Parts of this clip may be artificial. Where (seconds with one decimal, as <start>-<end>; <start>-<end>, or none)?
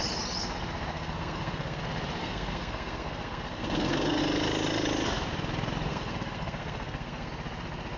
0.9-1.8; 2.2-4.2; 5.9-7.3